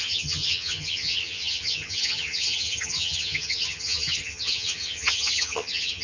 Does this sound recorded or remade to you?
remade